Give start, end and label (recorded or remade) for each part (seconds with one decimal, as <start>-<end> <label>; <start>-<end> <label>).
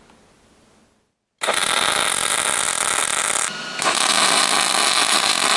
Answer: 0.0-5.6 recorded